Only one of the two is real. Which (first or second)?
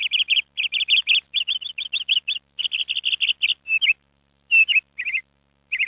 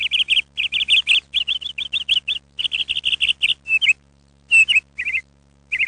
second